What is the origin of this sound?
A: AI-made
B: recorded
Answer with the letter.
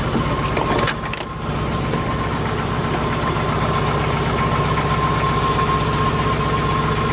B